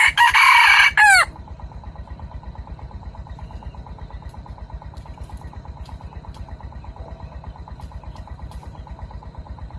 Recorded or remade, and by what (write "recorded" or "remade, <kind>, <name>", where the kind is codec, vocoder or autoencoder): recorded